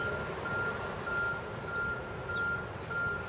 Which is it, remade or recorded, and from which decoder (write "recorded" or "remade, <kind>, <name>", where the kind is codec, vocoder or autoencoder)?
recorded